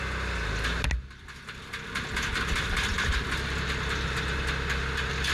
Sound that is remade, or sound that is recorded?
recorded